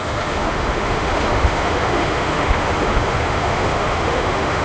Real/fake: fake